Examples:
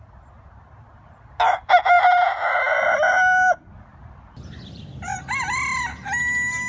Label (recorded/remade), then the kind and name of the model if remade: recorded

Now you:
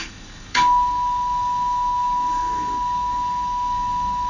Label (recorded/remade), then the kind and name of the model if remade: remade, codec, DAC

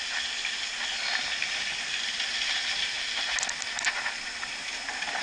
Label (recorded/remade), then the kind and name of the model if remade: recorded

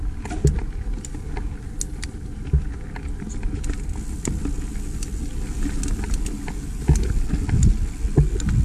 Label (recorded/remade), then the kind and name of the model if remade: recorded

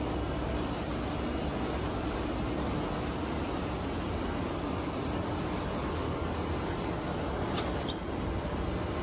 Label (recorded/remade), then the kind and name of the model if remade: recorded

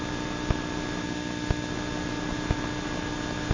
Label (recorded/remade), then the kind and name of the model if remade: recorded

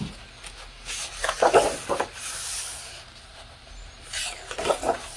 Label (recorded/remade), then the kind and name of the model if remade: recorded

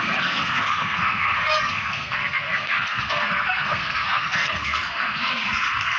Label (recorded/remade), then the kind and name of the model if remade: remade, codec, SNAC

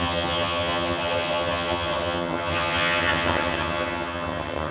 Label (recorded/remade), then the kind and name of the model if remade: remade, vocoder, HiFi-GAN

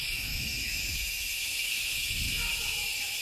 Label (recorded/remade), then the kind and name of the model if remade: remade, autoencoder, DAC-VAE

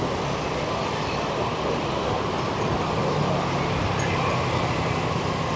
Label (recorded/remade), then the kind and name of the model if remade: recorded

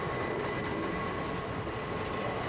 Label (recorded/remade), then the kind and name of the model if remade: recorded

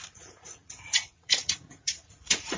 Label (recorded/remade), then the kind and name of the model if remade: remade, vocoder, Vocos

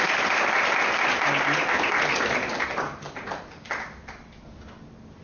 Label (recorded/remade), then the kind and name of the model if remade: recorded